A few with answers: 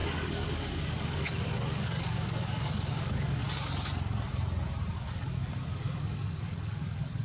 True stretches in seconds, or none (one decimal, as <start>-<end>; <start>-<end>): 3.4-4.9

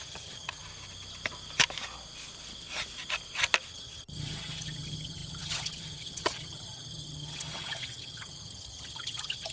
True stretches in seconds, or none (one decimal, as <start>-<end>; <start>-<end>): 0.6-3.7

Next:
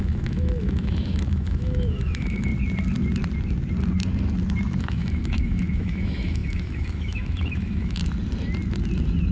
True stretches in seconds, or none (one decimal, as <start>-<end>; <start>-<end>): 2.5-4.8; 8.0-9.3

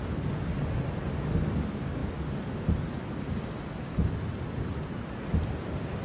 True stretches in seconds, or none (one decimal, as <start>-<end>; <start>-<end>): 0.0-6.0

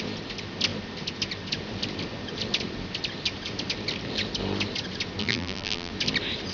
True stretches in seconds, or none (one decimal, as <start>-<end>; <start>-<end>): 0.0-5.2; 5.9-6.5

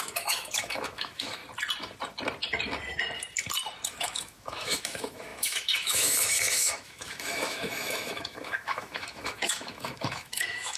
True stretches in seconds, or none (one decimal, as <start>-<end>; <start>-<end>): 1.4-3.9

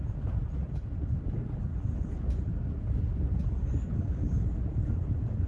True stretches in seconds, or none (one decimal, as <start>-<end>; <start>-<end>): 0.0-5.5

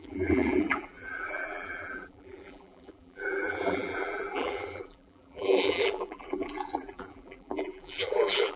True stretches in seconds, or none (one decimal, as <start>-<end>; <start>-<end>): none